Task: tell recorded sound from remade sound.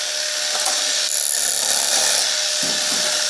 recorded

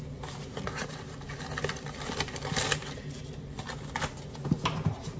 recorded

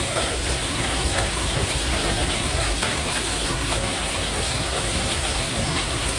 remade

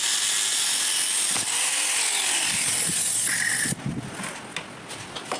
recorded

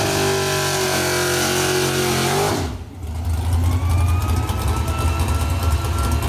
recorded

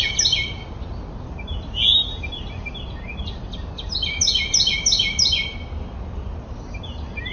recorded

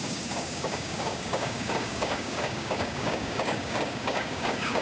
remade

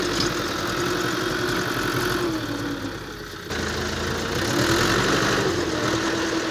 recorded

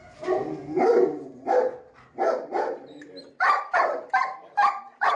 recorded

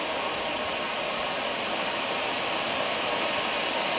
recorded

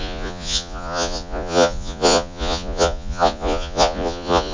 remade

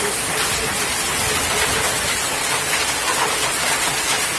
recorded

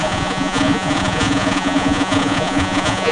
remade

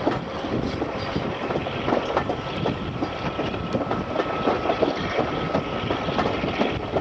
recorded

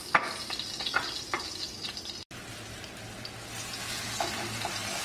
recorded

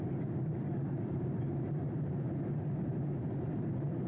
remade